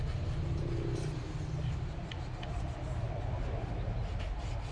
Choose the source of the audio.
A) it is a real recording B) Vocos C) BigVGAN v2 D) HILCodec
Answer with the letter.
A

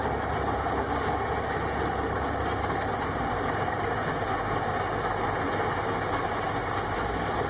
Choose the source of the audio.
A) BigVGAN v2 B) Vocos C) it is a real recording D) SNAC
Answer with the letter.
C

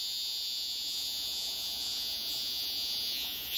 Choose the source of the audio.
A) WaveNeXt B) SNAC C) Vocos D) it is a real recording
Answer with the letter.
C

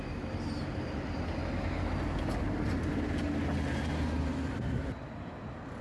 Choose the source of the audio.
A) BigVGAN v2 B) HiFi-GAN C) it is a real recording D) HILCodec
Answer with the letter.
C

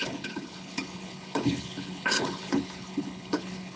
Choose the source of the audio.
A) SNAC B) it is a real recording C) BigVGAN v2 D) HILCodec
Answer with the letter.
D